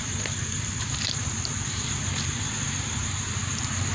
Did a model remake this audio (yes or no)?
yes